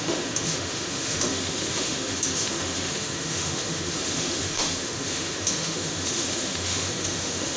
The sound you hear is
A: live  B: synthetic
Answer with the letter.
B